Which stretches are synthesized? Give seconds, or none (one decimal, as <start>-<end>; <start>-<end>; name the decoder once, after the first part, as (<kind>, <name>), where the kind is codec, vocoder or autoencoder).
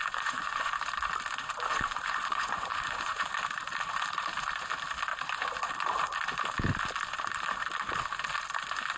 0.0-0.7 (vocoder, Vocos); 1.7-3.3